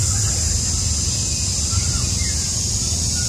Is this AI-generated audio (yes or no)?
no